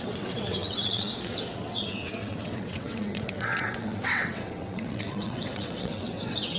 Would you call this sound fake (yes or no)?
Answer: yes